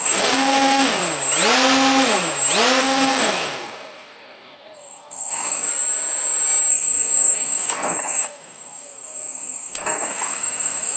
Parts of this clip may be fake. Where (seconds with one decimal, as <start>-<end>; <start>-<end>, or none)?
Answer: 0.0-1.0; 2.8-5.7; 6.7-11.0